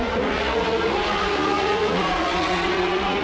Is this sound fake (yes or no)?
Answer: yes